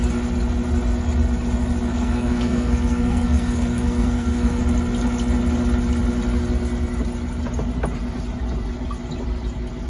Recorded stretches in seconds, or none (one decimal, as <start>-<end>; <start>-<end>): 0.0-1.9; 4.6-9.9